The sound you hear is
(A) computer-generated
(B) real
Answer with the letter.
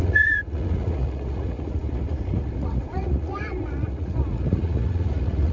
A